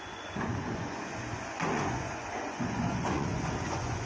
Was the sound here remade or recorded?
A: remade